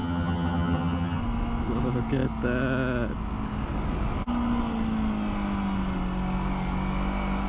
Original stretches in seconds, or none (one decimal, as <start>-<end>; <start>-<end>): 1.2-7.5